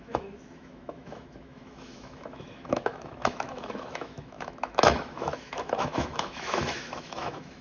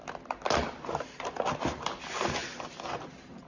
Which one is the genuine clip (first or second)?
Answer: second